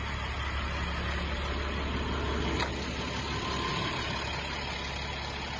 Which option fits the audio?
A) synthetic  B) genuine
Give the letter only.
B